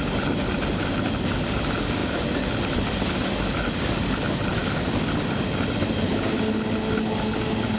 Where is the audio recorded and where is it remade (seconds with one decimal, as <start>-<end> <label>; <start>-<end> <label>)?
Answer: 0.0-7.8 recorded